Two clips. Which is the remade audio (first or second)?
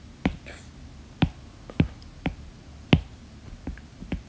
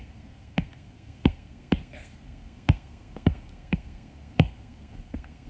second